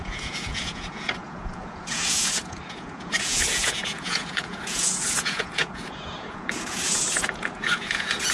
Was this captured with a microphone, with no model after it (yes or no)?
no